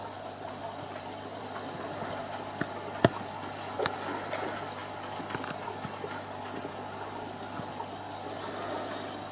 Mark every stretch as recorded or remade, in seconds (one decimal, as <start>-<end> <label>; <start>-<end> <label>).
0.0-9.3 recorded